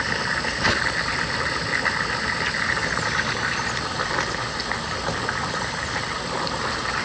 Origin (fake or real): real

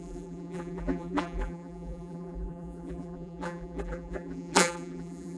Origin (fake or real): fake